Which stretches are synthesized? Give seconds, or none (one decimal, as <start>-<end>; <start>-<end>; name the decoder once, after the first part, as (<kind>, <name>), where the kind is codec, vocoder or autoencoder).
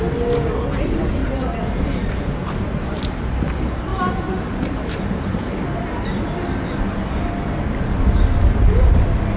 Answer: 1.2-3.3 (vocoder, BigVGAN v2); 3.9-5.4